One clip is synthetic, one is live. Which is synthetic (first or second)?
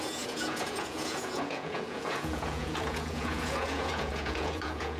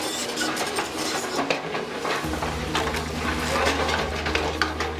first